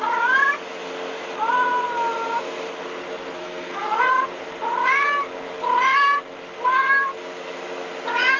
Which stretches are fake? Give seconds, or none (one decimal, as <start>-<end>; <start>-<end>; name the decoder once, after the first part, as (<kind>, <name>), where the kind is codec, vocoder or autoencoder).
3.4-4.1 (codec, SNAC)